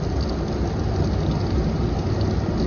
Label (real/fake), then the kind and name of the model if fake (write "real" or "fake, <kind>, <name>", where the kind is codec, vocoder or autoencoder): real